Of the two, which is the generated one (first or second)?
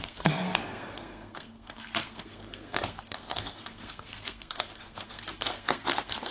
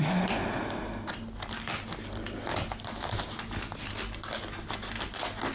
first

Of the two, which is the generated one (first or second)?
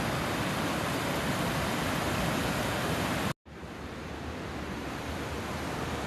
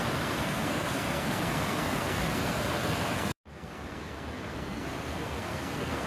second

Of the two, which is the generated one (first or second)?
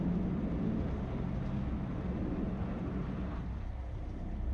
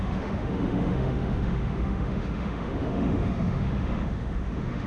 second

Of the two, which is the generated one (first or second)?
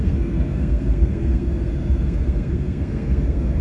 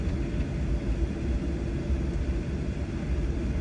first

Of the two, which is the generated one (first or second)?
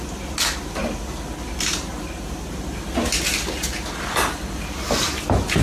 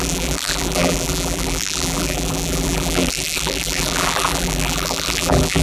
second